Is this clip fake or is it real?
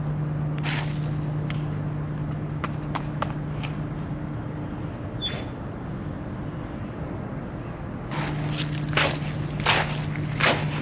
real